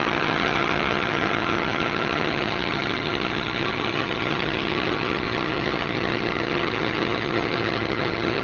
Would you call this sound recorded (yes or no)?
no